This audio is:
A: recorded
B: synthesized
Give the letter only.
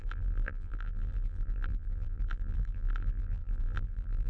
B